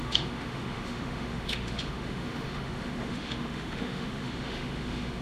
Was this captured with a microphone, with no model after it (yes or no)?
no